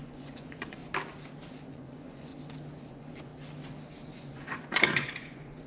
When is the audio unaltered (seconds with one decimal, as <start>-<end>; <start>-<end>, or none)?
0.8-1.7; 2.3-2.9; 3.3-4.1